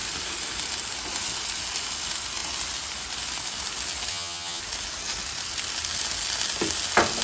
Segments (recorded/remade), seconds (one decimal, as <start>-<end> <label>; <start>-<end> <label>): 0.0-4.1 recorded; 4.1-4.6 remade; 4.6-7.2 recorded